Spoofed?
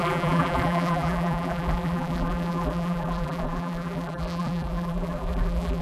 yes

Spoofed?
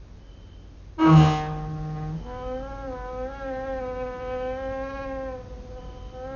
no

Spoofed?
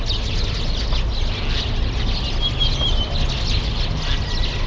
no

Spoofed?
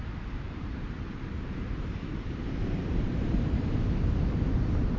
yes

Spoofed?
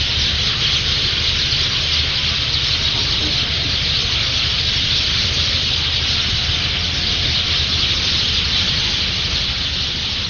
no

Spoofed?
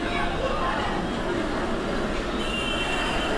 no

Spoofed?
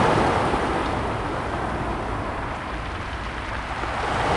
no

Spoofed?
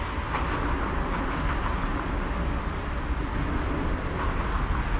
no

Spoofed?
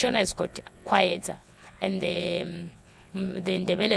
yes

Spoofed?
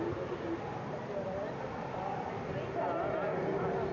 no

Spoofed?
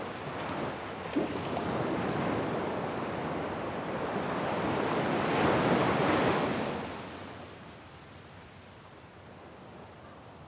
no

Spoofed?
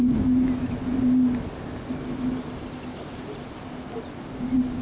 no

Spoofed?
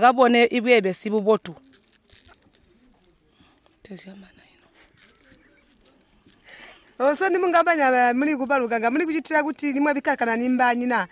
no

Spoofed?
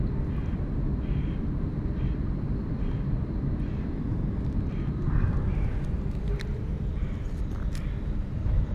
yes